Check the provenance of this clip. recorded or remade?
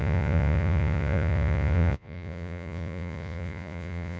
remade